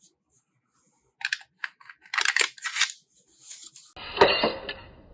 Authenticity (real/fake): real